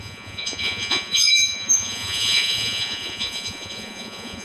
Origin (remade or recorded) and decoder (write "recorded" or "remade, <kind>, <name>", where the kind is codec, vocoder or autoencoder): remade, vocoder, Vocos